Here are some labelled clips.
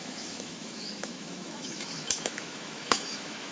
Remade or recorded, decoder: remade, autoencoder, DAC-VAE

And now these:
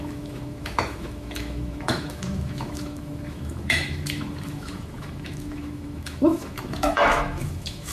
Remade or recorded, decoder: remade, autoencoder, DAC-VAE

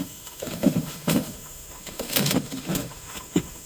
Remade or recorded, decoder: remade, autoencoder, DAC-VAE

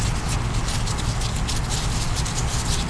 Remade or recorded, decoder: recorded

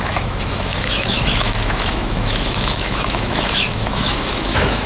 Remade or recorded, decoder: remade, autoencoder, DAC-VAE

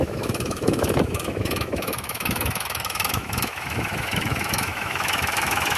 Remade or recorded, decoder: remade, autoencoder, DAC-VAE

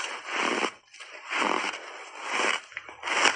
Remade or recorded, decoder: recorded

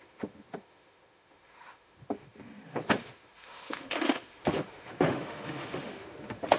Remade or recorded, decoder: remade, autoencoder, DAC-VAE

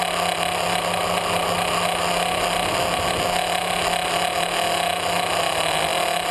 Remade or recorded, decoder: recorded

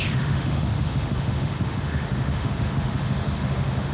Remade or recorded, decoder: remade, autoencoder, DAC-VAE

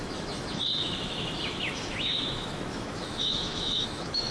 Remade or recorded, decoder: remade, autoencoder, DAC-VAE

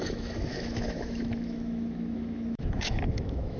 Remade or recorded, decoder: remade, autoencoder, DAC-VAE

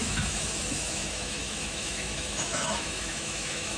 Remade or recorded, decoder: remade, autoencoder, DAC-VAE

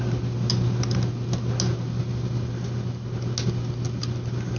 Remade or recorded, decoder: recorded